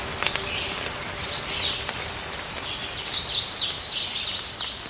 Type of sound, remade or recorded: recorded